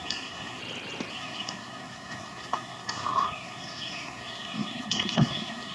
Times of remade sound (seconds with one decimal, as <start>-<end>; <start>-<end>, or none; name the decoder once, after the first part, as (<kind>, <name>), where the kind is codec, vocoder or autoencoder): 0.0-0.6 (codec, SNAC); 1.1-5.7